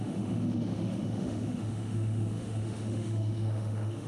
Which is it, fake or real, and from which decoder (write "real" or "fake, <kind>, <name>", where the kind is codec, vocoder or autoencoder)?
fake, autoencoder, DAC-VAE